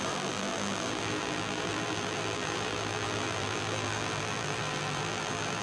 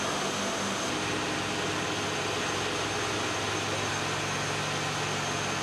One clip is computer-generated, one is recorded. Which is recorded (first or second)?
second